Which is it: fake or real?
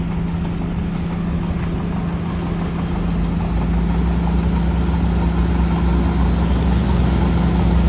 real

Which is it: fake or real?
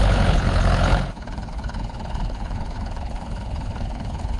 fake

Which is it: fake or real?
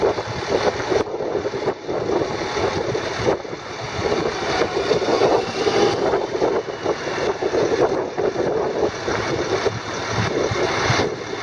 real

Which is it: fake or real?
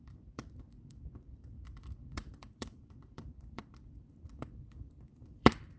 fake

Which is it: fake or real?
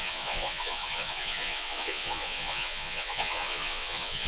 fake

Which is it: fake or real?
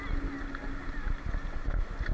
real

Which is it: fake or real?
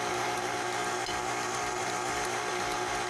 real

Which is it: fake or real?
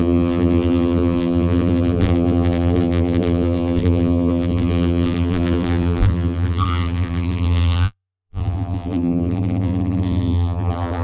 fake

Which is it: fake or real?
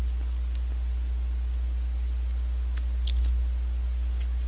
real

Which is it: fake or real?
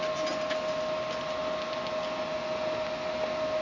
real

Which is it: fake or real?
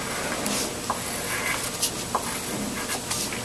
real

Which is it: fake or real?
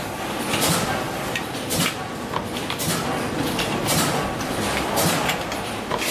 real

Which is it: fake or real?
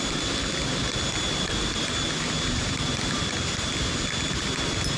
real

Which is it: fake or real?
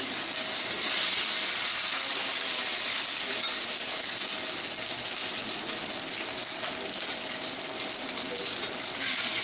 real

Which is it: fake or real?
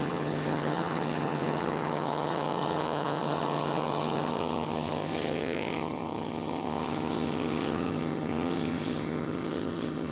fake